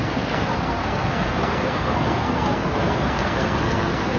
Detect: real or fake fake